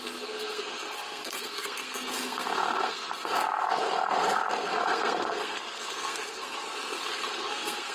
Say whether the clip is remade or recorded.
remade